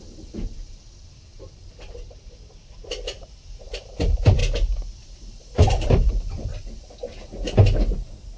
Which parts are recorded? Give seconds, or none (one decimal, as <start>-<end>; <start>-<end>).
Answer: 4.4-4.9; 6.5-8.4